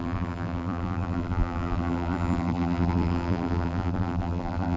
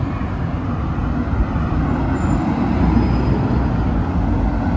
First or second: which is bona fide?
second